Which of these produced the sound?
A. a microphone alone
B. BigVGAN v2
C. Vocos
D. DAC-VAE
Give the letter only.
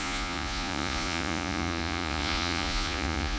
C